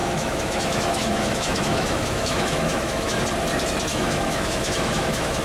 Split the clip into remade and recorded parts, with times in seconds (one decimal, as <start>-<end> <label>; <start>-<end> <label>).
0.0-3.2 remade; 3.2-3.9 recorded; 3.9-5.4 remade